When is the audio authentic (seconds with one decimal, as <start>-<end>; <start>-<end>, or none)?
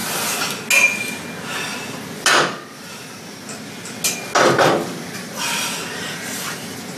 0.0-7.0